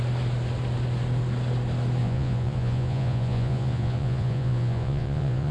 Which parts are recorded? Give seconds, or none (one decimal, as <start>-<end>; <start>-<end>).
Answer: 0.0-2.0